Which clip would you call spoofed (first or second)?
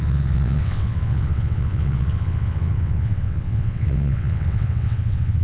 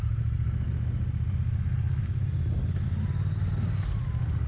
first